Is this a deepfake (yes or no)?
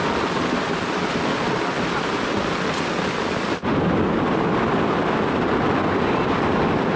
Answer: no